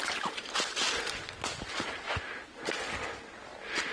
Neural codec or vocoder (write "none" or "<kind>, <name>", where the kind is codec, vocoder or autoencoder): none